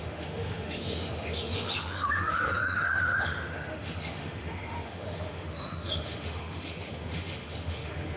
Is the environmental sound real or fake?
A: fake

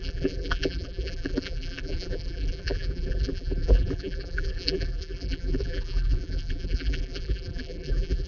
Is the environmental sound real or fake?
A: fake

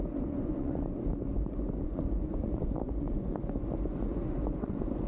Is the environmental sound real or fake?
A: fake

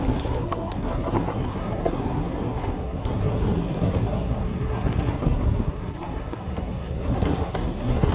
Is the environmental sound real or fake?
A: fake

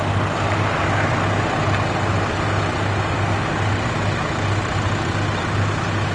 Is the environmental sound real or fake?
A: real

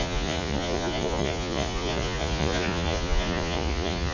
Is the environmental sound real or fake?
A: fake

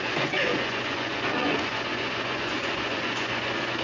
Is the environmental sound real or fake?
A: fake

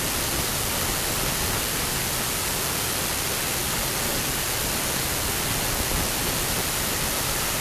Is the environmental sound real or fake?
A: real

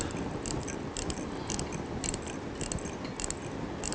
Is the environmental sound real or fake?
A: real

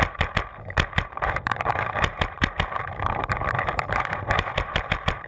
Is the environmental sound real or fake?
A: fake